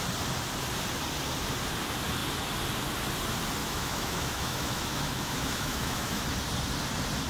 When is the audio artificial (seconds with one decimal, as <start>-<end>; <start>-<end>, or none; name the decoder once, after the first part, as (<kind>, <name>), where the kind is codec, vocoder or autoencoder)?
3.6-6.2 (autoencoder, DAC-VAE)